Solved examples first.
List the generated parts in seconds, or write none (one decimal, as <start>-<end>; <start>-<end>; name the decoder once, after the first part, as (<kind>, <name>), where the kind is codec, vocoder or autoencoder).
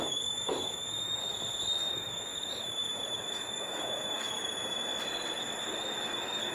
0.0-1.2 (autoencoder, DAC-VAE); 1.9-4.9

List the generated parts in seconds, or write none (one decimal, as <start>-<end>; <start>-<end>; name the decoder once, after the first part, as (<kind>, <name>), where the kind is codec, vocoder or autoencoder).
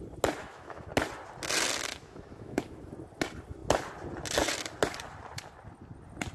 0.4-0.9 (autoencoder, DAC-VAE); 1.9-2.9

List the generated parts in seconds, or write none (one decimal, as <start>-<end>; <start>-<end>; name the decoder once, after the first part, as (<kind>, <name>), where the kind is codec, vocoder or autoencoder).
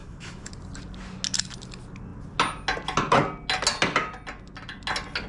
0.0-0.5 (autoencoder, DAC-VAE)